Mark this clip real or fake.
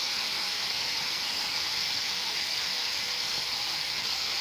fake